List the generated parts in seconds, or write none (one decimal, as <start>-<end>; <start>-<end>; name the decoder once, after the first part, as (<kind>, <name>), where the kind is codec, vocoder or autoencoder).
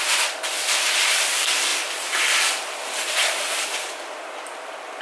none